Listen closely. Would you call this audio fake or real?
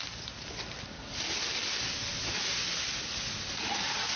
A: real